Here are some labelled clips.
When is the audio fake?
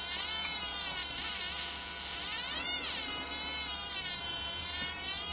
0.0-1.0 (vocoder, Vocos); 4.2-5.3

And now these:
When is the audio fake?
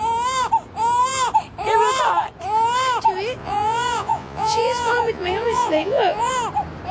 3.4-6.3 (vocoder, Vocos)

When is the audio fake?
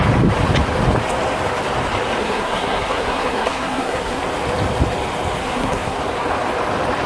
2.2-4.2 (codec, SNAC); 5.4-6.0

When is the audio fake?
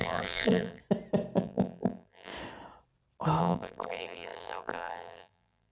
0.0-0.8 (vocoder, BigVGAN v2); 1.4-2.3; 3.4-5.7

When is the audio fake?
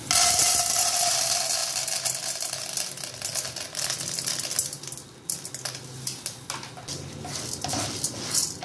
none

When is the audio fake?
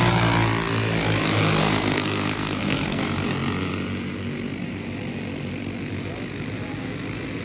1.6-3.0 (codec, SNAC)